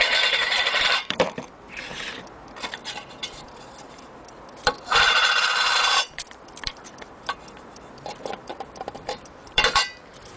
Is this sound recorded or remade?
remade